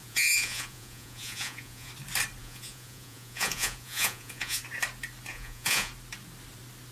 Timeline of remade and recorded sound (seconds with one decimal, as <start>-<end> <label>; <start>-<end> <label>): 0.0-1.9 remade; 1.9-2.4 recorded; 2.4-4.6 remade; 4.6-5.3 recorded; 5.3-5.9 remade; 5.9-6.9 recorded